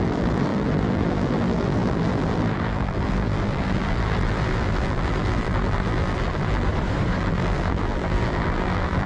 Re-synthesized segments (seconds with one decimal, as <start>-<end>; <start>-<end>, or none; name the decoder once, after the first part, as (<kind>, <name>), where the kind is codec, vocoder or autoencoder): 0.0-6.7 (vocoder, BigVGAN v2); 7.2-9.1